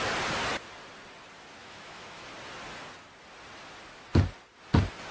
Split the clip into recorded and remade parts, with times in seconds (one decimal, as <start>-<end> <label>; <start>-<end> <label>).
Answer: 0.0-1.6 recorded; 1.6-2.3 remade; 2.3-5.1 recorded